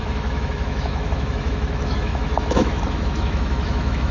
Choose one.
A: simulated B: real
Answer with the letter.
A